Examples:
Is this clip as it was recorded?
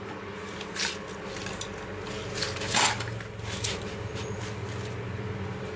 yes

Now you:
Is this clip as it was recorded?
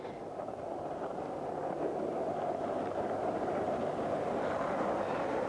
yes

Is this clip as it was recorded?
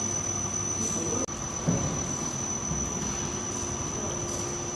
yes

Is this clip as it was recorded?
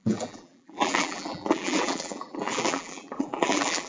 no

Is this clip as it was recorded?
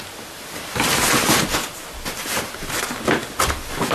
yes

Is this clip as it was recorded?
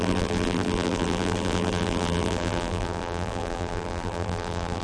no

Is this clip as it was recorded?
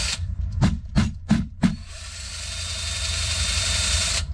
no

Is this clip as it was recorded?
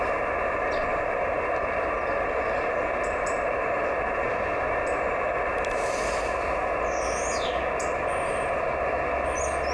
yes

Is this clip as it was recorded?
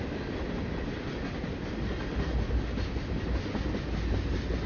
yes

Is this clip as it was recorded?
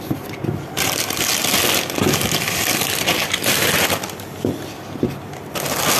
yes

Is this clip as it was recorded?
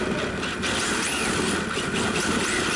yes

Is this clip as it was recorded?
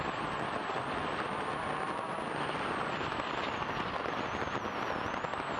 yes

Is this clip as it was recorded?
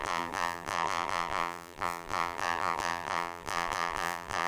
no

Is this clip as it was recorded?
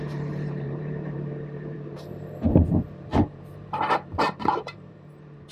no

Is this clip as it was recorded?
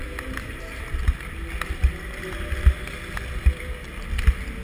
yes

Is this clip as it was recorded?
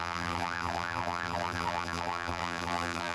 no